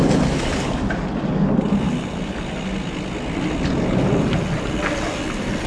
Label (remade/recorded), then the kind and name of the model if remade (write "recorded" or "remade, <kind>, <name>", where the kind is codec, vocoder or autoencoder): recorded